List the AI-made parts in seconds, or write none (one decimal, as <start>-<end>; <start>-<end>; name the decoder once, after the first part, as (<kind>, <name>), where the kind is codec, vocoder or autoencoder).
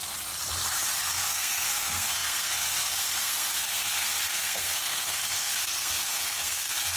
1.0-7.0 (codec, SNAC)